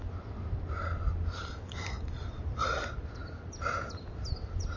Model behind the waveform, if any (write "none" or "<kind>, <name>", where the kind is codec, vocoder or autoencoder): none